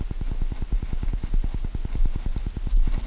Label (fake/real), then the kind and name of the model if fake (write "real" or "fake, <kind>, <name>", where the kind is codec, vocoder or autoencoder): real